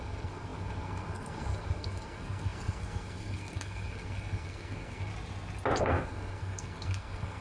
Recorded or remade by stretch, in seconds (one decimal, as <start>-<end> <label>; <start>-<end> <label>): 0.0-5.1 remade; 5.1-5.8 recorded; 5.8-7.4 remade